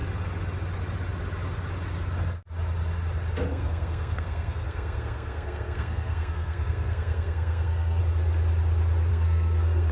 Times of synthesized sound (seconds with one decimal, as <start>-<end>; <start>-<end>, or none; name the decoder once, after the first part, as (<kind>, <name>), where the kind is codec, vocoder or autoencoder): 3.5-8.0 (codec, SNAC); 9.1-9.9